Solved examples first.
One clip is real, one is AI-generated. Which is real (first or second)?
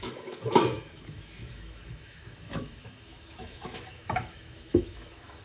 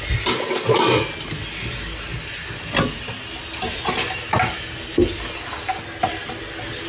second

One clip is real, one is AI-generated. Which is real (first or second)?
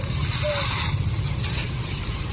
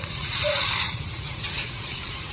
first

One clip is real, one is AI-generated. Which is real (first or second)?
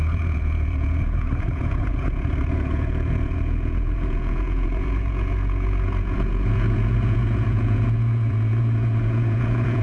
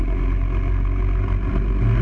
second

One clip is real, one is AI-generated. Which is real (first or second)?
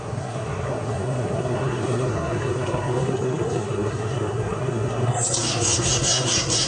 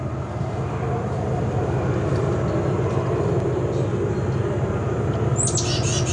second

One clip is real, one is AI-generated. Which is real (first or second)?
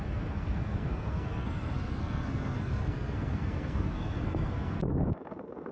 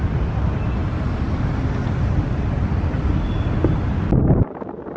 second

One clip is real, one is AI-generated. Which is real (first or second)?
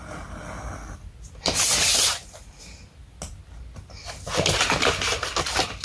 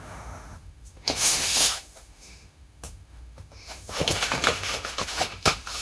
first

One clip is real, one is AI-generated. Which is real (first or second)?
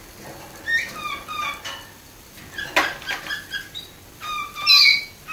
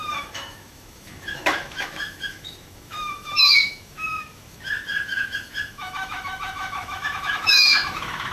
first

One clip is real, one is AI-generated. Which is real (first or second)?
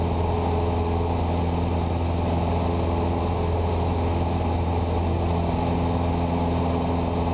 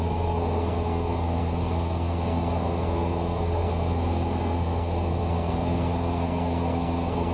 first